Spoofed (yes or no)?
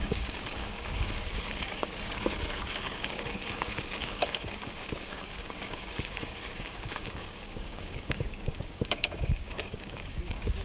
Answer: yes